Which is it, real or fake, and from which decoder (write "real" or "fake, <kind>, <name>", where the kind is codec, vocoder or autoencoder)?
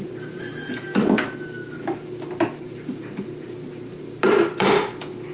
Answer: real